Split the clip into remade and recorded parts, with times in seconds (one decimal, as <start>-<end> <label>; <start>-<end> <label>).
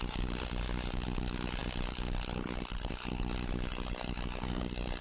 0.0-5.0 recorded